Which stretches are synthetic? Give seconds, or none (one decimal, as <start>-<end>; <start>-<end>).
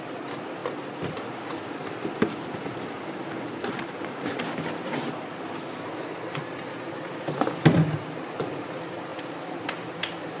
0.0-10.4